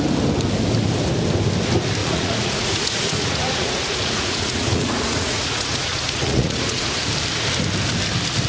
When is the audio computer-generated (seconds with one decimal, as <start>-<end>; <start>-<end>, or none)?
2.0-7.1